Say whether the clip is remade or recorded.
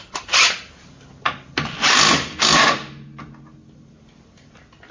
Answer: recorded